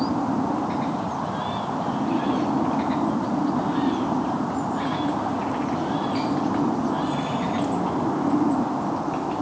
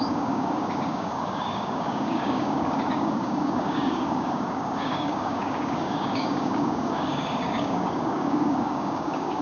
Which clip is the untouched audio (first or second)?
first